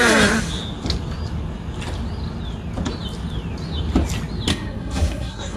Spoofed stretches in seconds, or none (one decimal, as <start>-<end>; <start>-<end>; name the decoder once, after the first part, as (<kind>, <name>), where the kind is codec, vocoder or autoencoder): 4.5-5.6 (codec, SNAC)